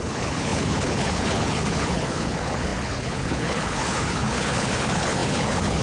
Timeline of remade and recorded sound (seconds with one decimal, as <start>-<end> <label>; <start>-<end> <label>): 0.0-5.8 remade